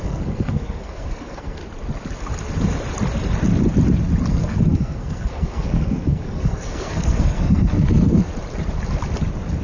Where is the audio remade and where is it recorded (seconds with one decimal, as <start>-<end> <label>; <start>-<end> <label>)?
0.0-1.6 remade; 1.6-4.3 recorded; 4.3-8.3 remade; 8.3-9.6 recorded